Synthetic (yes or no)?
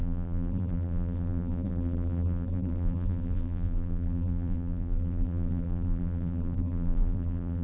yes